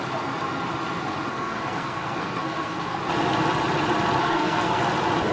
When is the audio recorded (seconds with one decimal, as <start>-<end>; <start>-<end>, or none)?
0.0-1.3; 3.0-4.2; 4.8-5.3